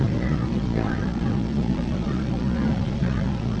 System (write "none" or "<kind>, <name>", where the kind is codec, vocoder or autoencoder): vocoder, Vocos